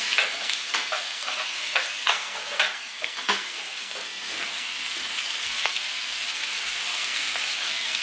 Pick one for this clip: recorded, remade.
remade